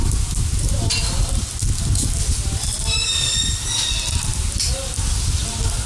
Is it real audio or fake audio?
real